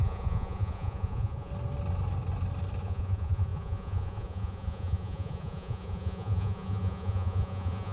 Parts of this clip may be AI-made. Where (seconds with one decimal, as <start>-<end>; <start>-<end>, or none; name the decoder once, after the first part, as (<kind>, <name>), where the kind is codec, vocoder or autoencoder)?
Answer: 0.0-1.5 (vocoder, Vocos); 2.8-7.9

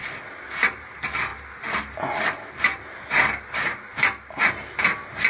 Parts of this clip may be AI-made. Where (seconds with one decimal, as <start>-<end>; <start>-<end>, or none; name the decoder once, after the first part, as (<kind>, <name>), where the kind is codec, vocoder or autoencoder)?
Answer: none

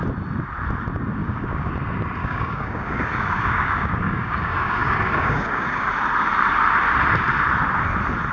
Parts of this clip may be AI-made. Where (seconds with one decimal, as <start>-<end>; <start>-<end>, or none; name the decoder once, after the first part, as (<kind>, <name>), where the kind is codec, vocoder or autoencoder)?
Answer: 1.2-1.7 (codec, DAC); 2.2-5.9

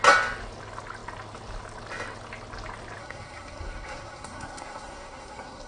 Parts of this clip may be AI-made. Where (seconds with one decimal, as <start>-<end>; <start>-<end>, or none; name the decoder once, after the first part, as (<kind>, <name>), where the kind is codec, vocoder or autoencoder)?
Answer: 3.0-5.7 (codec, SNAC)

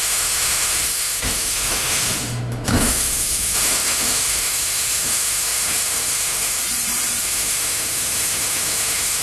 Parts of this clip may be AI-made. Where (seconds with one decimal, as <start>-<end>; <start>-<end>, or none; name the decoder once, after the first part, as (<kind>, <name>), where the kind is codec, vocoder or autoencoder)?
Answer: 0.0-6.6 (autoencoder, DAC-VAE); 7.2-9.2

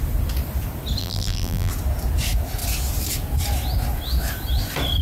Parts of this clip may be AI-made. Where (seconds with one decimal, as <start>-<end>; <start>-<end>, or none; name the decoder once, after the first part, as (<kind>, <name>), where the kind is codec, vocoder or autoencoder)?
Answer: 1.0-1.7 (vocoder, BigVGAN v2)

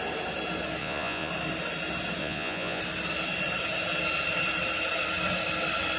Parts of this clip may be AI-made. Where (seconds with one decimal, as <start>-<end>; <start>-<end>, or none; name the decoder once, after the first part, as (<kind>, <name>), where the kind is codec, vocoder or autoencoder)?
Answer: 0.8-1.3 (vocoder, Vocos); 2.2-2.8

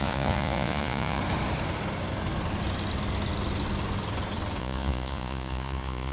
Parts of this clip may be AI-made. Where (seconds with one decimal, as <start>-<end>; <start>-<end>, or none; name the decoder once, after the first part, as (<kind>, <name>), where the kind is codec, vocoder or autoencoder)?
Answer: 0.0-1.2 (vocoder, Vocos); 4.6-6.1